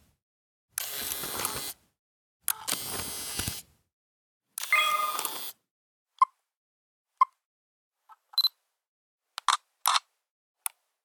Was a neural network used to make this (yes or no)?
no